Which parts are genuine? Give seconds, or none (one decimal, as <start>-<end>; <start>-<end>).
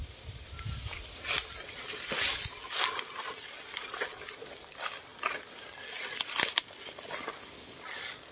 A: 0.0-8.3